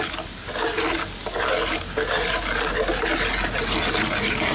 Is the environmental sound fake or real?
real